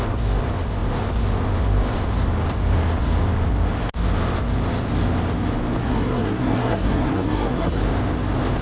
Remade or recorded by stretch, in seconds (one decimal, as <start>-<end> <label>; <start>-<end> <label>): 0.0-5.8 recorded; 5.8-7.8 remade; 7.8-8.6 recorded